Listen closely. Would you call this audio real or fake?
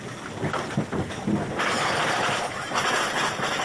real